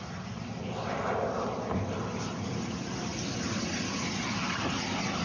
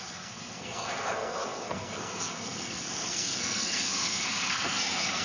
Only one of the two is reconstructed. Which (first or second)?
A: second